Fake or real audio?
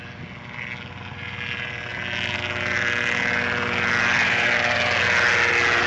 real